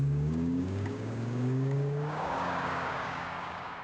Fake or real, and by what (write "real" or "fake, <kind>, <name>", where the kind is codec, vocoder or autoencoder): fake, codec, DAC